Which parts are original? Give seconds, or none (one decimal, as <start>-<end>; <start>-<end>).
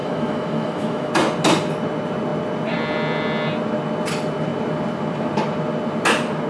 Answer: 1.1-6.5